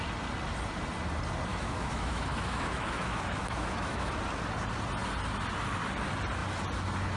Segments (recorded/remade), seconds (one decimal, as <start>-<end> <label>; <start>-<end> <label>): 0.0-1.5 recorded; 1.5-4.1 remade; 4.1-7.2 recorded